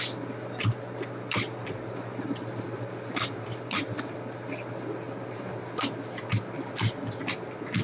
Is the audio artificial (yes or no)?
no